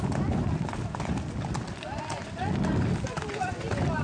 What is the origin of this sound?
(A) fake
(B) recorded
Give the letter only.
B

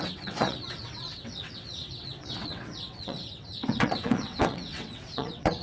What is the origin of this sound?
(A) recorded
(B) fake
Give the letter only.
B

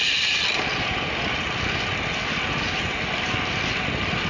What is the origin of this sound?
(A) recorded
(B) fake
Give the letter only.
A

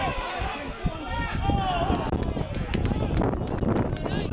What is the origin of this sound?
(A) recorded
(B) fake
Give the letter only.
A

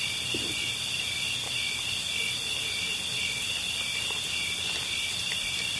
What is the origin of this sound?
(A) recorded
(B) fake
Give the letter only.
A